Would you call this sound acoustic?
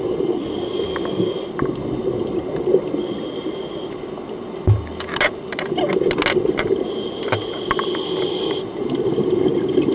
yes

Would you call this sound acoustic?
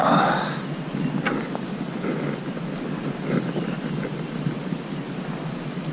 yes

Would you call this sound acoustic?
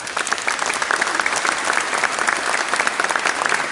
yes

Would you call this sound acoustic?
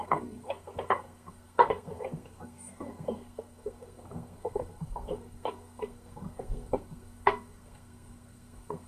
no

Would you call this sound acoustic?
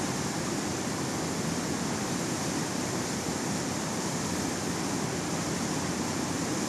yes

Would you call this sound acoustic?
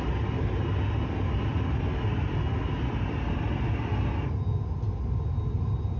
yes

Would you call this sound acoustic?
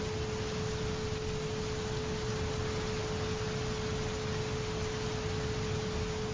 yes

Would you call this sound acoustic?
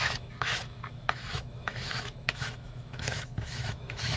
no